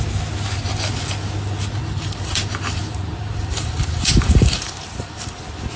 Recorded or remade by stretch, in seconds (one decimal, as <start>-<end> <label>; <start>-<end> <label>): 0.0-1.8 recorded; 1.8-5.3 remade; 5.3-5.8 recorded